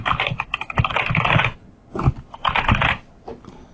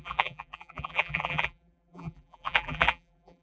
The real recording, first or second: first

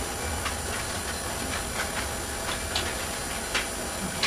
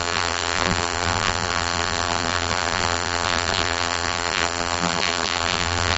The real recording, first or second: first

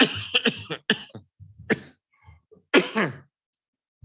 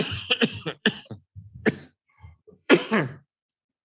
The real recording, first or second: first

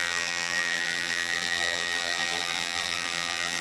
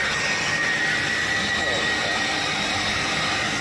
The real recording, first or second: second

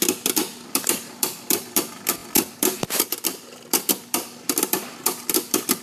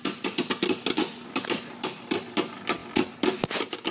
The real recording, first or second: second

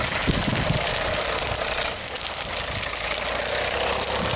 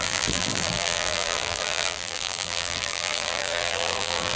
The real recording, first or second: first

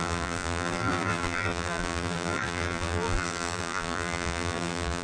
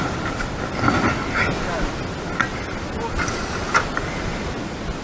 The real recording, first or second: second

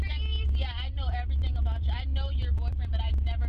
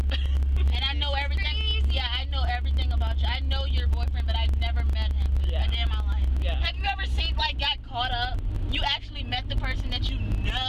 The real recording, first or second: second